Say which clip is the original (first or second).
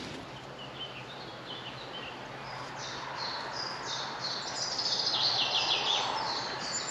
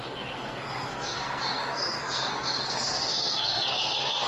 first